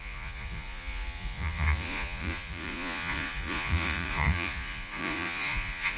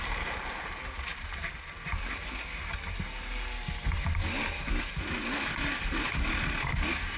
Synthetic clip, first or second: first